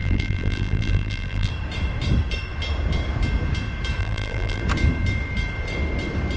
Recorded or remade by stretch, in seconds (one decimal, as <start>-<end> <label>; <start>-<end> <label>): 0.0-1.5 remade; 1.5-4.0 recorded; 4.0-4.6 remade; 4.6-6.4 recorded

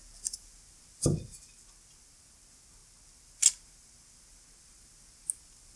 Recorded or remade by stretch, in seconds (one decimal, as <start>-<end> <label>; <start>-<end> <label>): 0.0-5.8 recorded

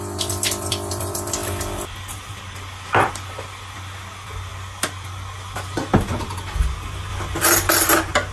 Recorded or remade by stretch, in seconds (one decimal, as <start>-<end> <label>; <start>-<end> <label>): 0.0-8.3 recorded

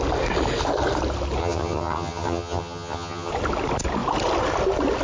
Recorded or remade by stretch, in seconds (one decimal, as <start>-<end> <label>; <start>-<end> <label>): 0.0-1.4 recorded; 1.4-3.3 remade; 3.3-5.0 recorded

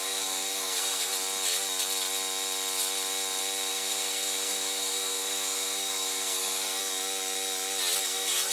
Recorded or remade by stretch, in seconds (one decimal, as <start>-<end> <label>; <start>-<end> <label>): 0.0-1.1 remade; 1.1-3.7 recorded; 3.7-6.8 remade; 6.8-8.0 recorded; 8.0-8.5 remade